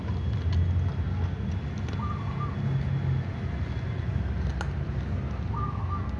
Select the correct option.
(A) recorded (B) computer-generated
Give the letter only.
A